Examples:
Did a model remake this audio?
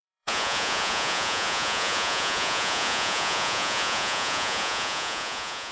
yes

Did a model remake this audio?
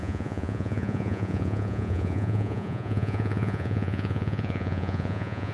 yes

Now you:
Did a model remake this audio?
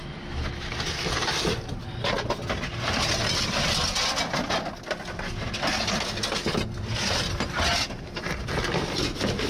no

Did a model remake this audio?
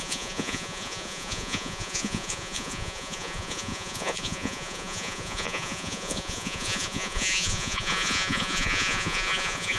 yes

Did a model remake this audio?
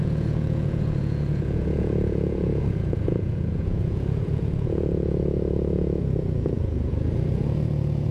yes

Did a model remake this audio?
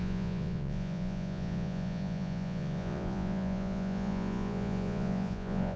yes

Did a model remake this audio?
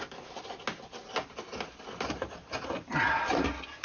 no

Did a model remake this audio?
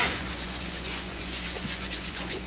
yes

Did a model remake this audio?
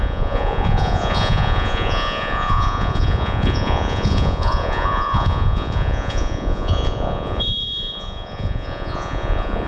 yes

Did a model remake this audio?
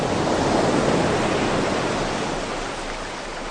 no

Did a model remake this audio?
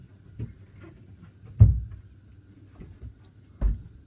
no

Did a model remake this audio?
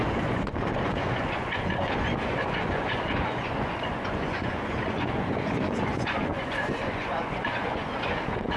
yes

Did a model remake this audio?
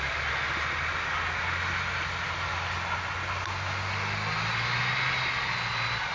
no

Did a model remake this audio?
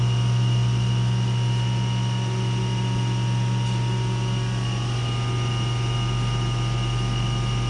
no